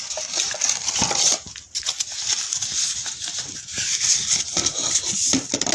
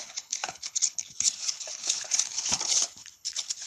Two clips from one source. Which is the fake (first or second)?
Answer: second